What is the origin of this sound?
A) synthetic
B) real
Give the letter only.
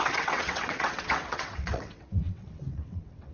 A